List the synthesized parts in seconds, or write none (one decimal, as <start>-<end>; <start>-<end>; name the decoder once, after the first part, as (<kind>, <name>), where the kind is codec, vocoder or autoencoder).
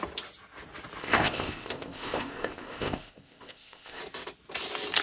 1.0-4.0 (codec, ZipCodec)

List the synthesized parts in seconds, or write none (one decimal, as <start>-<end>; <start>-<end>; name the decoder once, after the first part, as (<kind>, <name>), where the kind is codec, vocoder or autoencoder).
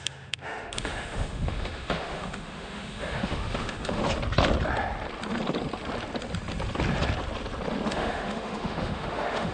0.0-4.0 (autoencoder, DAC-VAE); 7.9-9.5